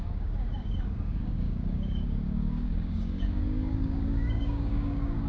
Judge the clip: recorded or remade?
remade